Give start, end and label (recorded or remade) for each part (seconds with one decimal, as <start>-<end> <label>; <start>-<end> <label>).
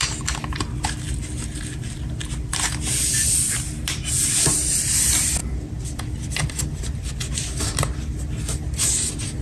0.0-5.4 recorded; 5.4-7.1 remade; 7.1-9.4 recorded